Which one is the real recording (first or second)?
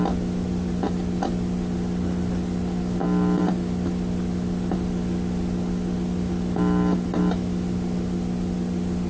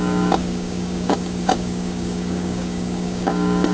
first